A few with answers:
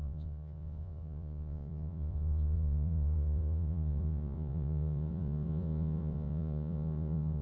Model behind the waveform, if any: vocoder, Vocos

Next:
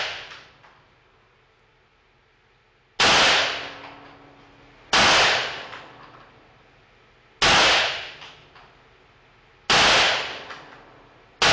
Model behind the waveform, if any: none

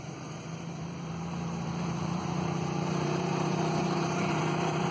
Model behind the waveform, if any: vocoder, BigVGAN v2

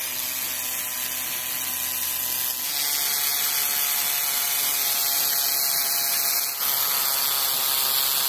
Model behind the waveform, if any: none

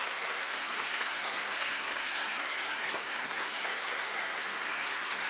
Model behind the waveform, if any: codec, SNAC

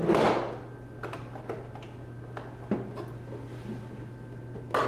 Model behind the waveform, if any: none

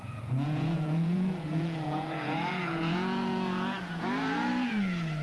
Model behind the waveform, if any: vocoder, Vocos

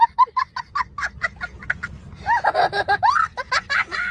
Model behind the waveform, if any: none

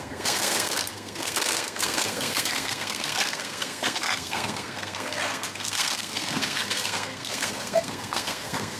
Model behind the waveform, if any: codec, SNAC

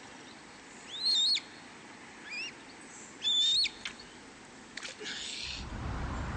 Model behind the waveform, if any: none